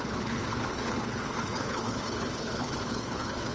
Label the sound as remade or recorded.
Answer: remade